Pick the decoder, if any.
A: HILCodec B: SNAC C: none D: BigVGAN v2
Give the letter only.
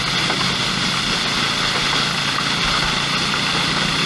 C